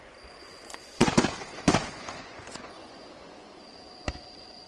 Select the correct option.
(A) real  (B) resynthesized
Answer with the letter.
B